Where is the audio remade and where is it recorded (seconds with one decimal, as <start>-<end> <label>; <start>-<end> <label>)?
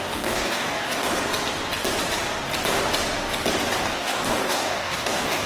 0.0-1.1 remade; 1.1-3.8 recorded; 3.8-5.5 remade